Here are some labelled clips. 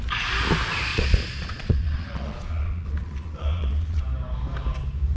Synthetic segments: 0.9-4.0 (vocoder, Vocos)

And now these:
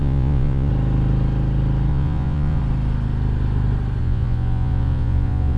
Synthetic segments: 0.0-0.7 (vocoder, Vocos); 1.9-2.6; 4.0-5.6

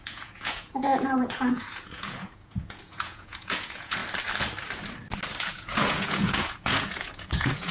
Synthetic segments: 0.0-4.0 (vocoder, Vocos); 5.4-7.7

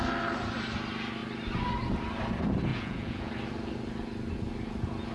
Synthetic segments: 2.7-3.3 (vocoder, Vocos)